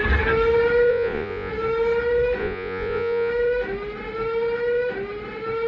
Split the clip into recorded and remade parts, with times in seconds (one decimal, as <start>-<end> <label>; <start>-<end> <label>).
0.0-0.9 recorded; 0.9-1.5 remade; 1.5-2.4 recorded; 2.4-3.3 remade; 3.3-5.7 recorded